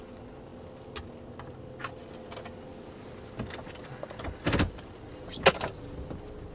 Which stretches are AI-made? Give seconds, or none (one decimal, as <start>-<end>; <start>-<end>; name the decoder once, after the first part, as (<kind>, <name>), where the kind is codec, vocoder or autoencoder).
none